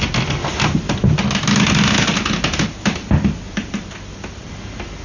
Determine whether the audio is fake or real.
real